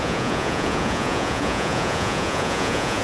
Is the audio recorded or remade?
remade